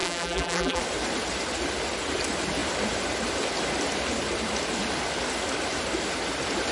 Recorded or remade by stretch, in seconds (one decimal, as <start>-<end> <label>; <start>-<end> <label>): 0.0-0.8 remade; 0.8-6.7 recorded